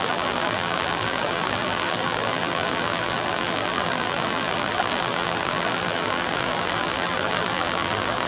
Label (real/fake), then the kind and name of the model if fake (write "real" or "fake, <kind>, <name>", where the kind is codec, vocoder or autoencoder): fake, vocoder, BigVGAN v2